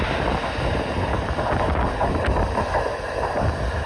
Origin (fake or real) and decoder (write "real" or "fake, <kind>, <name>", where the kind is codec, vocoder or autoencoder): real